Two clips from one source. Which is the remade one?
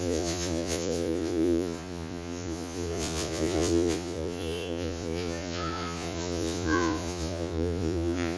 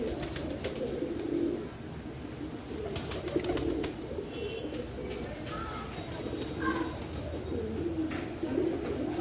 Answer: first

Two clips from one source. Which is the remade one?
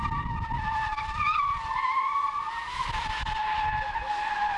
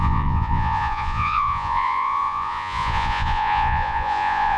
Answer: second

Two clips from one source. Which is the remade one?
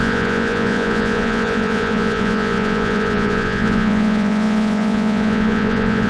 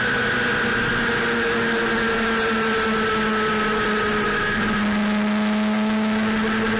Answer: first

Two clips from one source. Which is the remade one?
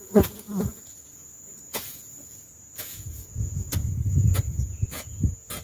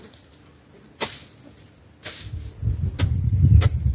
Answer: first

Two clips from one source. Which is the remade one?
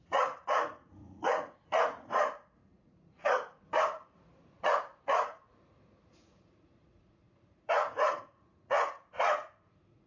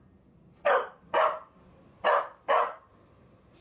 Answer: first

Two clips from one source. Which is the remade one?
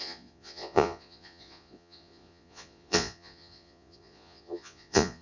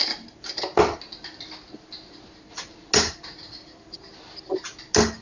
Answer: first